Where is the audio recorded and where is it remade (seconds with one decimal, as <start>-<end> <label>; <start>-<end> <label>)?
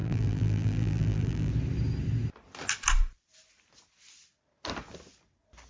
0.0-1.5 remade; 1.5-5.7 recorded